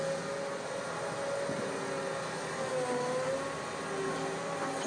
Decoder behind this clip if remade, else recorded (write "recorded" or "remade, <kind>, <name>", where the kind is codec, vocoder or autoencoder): recorded